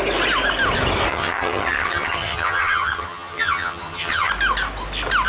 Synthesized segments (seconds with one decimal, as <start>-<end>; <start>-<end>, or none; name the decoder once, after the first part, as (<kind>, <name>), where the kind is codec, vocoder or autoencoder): 1.1-4.3 (vocoder, HiFi-GAN)